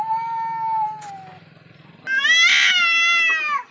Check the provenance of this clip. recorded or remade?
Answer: recorded